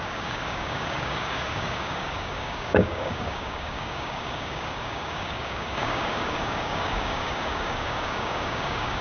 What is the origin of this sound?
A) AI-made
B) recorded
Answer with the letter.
A